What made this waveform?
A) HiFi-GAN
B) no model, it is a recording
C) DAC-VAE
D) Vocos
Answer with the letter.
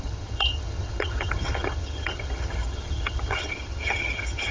A